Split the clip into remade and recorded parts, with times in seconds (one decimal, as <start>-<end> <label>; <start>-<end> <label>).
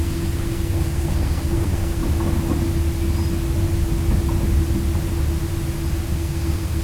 0.0-2.0 remade; 2.0-6.1 recorded; 6.1-6.8 remade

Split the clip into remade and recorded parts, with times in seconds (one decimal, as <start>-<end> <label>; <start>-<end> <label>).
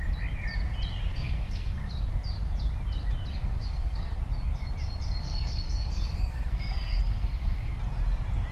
0.0-1.1 recorded; 1.1-1.9 remade; 1.9-3.3 recorded; 3.3-4.2 remade; 4.2-5.2 recorded; 5.2-7.8 remade; 7.8-8.5 recorded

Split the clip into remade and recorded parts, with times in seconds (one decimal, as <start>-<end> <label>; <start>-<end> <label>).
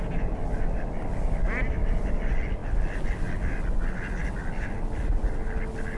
0.0-6.0 recorded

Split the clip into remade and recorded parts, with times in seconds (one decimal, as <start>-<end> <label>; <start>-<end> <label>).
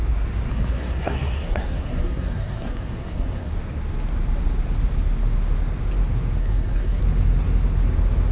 0.0-0.5 recorded; 0.5-3.5 remade; 3.5-6.4 recorded; 6.4-7.0 remade; 7.0-8.3 recorded